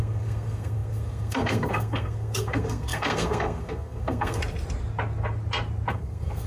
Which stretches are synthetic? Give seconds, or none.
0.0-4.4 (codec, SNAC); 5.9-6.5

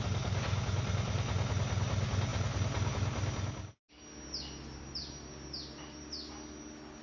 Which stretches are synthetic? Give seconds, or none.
none

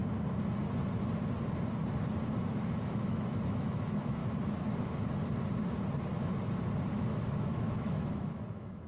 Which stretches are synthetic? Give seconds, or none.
2.5-4.2 (autoencoder, DAC-VAE); 6.9-8.9

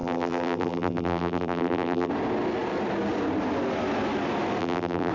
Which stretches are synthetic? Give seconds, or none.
0.0-2.1 (vocoder, BigVGAN v2); 4.6-5.1

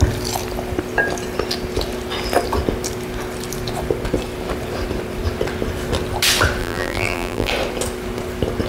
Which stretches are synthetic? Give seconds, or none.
6.6-7.5 (vocoder, BigVGAN v2)